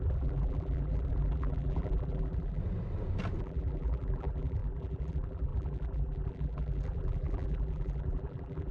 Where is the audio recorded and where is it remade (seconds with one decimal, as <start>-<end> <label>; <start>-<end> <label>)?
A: 0.0-2.6 remade; 2.6-3.4 recorded; 3.4-8.7 remade